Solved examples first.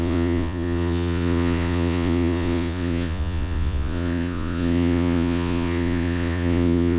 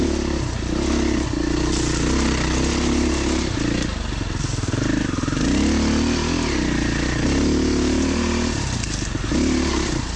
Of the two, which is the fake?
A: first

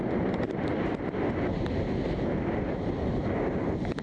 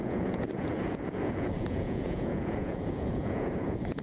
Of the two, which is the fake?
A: second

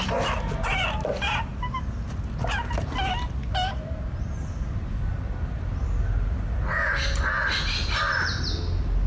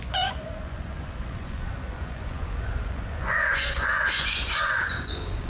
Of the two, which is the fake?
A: second